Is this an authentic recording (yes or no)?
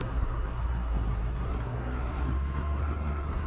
no